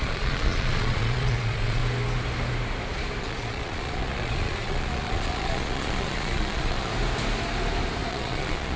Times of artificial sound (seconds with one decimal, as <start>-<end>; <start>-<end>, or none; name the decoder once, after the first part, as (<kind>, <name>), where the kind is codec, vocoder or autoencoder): 0.0-1.8 (vocoder, Vocos); 3.2-6.9; 8.1-8.8